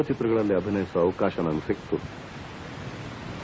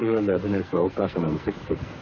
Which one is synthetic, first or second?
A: second